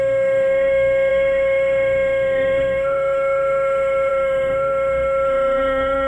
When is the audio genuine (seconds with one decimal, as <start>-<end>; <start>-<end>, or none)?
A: none